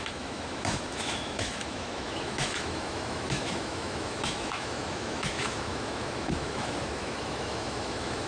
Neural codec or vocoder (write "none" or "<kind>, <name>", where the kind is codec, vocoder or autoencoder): autoencoder, DAC-VAE